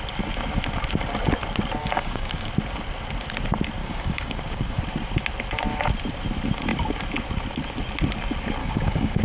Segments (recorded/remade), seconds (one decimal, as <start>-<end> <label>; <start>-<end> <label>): 0.0-1.8 recorded; 1.8-2.5 remade; 2.5-3.8 recorded; 3.8-4.8 remade; 4.8-8.6 recorded; 8.6-9.2 remade